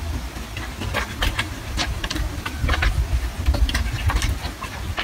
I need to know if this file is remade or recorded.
recorded